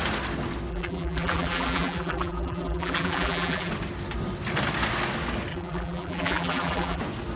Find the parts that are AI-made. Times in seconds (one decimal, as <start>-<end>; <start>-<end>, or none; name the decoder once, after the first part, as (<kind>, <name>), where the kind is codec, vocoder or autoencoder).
0.7-3.7 (vocoder, BigVGAN v2); 5.5-7.0